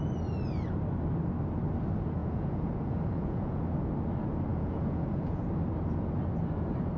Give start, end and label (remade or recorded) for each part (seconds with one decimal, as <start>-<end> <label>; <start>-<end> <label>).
0.0-2.2 recorded; 2.2-3.6 remade; 3.6-4.5 recorded; 4.5-5.4 remade; 5.4-7.0 recorded